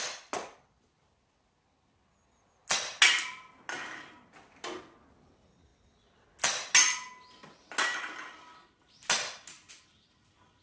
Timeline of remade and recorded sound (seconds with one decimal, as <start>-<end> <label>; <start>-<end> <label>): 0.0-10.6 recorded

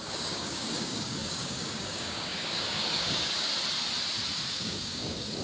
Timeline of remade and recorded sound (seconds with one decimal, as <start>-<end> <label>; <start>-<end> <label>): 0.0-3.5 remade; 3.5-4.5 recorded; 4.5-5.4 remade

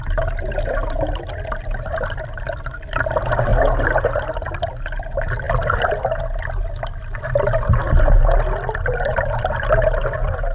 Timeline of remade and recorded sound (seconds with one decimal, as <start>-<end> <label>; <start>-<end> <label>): 0.0-10.5 recorded

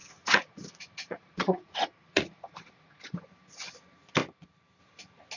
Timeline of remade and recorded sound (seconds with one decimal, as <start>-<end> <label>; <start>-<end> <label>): 0.0-3.2 remade; 3.2-5.4 recorded

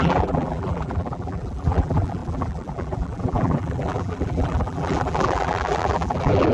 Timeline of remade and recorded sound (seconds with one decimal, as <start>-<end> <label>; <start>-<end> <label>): 0.0-6.5 remade

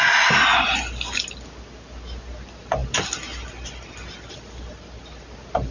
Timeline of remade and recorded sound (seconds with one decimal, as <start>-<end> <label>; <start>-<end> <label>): 0.0-5.7 recorded

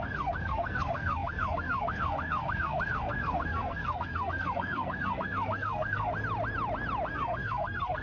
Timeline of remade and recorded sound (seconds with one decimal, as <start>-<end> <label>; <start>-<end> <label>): 0.0-6.1 remade; 6.1-7.1 recorded; 7.1-8.0 remade

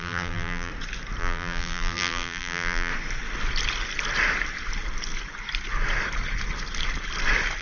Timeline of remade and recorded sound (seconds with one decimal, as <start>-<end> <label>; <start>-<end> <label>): 0.0-0.7 remade; 0.7-1.2 recorded; 1.2-2.9 remade; 2.9-7.6 recorded